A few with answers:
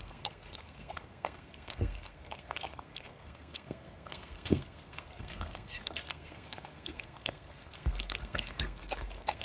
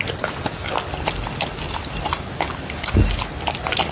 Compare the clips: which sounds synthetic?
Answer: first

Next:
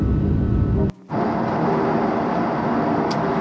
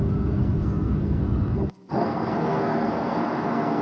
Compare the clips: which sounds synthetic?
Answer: second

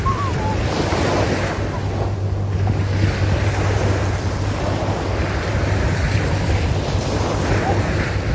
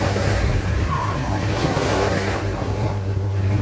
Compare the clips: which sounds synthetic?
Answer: second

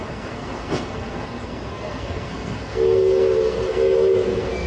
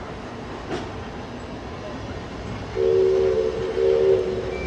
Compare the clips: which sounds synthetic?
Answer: first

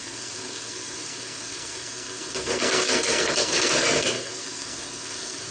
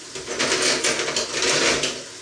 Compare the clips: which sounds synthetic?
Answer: first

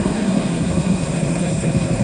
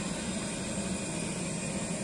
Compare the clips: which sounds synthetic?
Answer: first